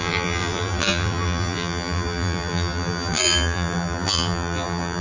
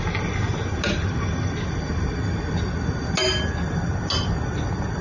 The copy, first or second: first